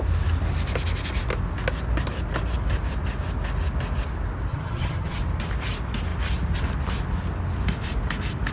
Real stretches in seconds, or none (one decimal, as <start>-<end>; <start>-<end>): 0.0-4.5; 5.2-8.5